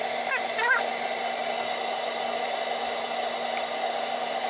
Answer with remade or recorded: recorded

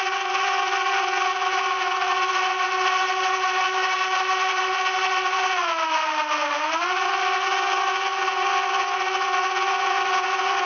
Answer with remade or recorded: recorded